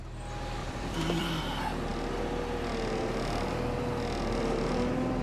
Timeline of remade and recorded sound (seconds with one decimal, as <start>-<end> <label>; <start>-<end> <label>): 0.0-0.6 recorded; 0.6-1.4 remade; 1.4-5.2 recorded

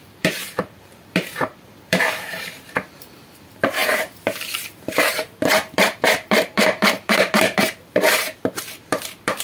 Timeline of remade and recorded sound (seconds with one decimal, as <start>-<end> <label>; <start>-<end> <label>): 0.0-9.4 remade

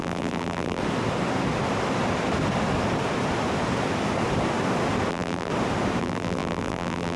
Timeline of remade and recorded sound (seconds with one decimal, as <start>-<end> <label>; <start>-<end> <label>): 0.0-0.8 remade; 0.8-5.1 recorded; 5.1-5.5 remade; 5.5-6.0 recorded; 6.0-7.2 remade

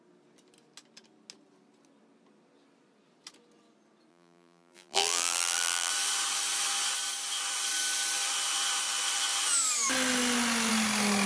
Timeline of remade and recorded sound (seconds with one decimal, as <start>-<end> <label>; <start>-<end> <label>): 0.0-4.1 recorded; 4.1-5.9 remade; 5.9-11.3 recorded